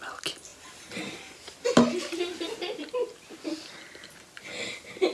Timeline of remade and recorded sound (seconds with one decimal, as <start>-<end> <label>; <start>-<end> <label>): 0.0-5.1 recorded